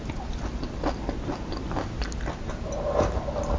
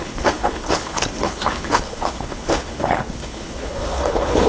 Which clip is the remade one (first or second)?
second